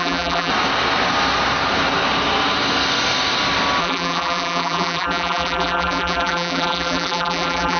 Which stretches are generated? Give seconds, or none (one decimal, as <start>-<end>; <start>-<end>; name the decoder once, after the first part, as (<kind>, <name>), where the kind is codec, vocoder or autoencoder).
0.0-0.5 (vocoder, BigVGAN v2); 3.8-7.8